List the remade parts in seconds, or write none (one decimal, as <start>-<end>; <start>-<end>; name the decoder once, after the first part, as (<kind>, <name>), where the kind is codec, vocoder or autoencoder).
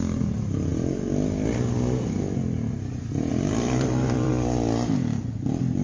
3.3-4.3 (vocoder, BigVGAN v2)